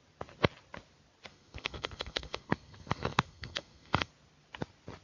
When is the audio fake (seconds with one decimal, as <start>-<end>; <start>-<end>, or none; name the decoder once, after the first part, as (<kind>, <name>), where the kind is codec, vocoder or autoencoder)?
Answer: 1.3-4.1 (codec, SNAC)